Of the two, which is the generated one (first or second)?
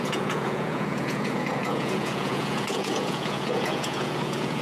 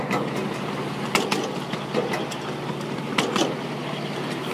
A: first